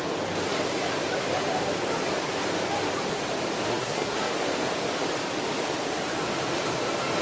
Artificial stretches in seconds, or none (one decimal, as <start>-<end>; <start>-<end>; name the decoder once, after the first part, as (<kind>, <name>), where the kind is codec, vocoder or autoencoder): 3.7-4.3 (codec, SNAC)